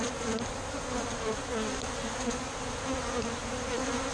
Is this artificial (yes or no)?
no